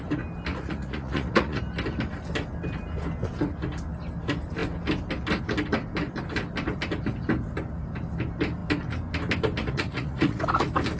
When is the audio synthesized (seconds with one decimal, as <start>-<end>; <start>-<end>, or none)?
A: 0.5-1.6; 9.6-10.4

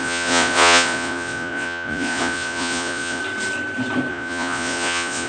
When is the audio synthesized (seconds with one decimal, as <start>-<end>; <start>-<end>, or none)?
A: 0.0-3.2; 4.1-5.3

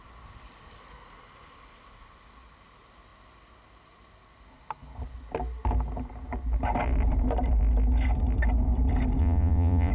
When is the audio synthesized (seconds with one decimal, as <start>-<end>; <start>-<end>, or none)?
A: 9.2-9.9